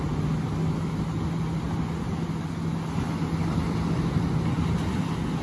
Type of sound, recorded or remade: recorded